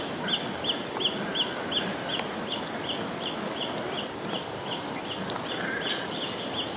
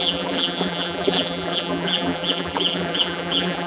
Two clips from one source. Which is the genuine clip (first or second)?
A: first